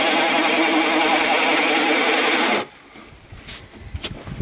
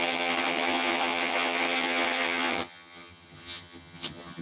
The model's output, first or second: second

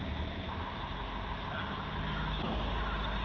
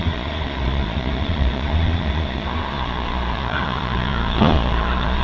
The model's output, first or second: second